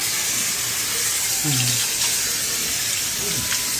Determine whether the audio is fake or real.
real